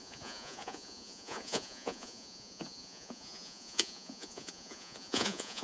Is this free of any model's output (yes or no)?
no